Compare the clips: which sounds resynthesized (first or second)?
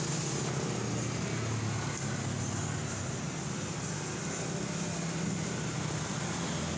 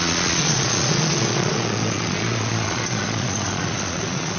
second